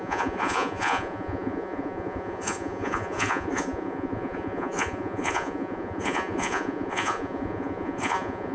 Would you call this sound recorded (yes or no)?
no